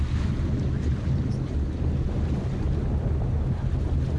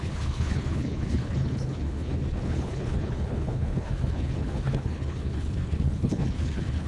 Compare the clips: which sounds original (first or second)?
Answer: first